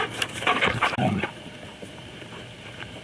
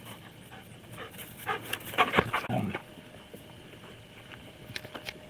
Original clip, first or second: second